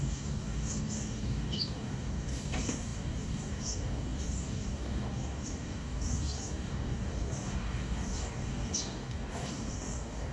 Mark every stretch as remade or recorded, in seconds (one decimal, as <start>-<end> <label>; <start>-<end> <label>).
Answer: 0.0-10.3 remade